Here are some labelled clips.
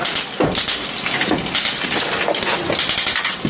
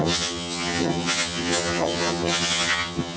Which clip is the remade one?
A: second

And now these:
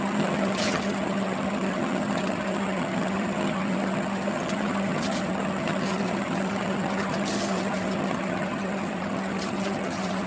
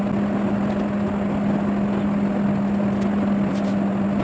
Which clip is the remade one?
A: first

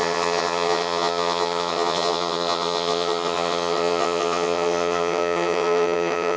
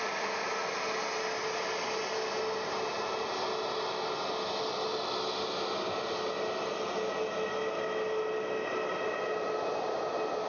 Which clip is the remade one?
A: first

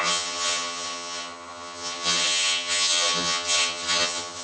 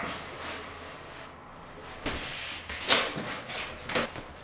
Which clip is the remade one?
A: first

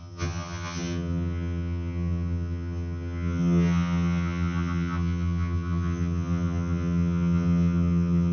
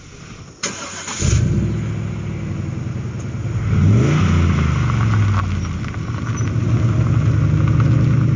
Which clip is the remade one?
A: first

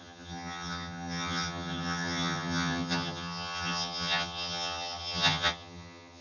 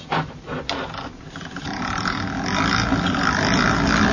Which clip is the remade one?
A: first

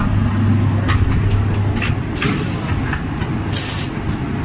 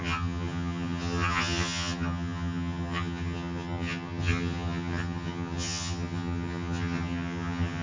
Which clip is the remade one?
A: second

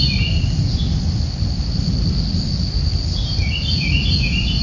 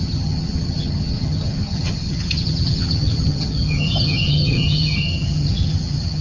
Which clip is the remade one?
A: second